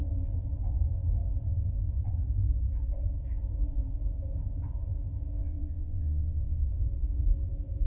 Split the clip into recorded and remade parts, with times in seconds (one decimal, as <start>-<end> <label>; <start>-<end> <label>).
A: 0.0-5.4 recorded; 5.4-6.7 remade; 6.7-7.9 recorded